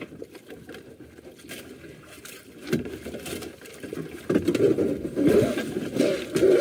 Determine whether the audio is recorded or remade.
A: recorded